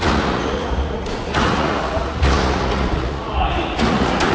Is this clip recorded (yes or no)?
no